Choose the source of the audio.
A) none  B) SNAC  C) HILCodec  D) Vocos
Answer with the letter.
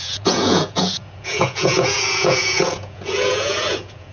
D